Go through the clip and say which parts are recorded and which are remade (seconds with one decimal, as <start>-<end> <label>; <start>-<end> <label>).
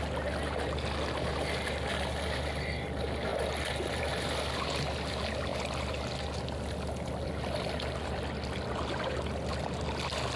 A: 0.0-10.4 recorded